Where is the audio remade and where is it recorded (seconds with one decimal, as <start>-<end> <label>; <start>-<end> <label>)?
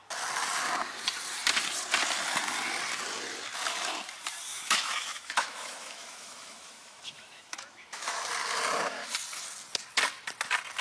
0.0-4.5 recorded; 4.5-8.2 remade; 8.2-10.8 recorded